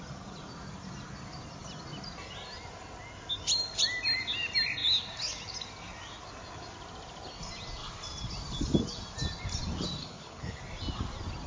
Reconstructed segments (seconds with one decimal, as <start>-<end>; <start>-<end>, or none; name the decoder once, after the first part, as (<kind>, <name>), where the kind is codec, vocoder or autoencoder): 10.0-10.6 (codec, HILCodec)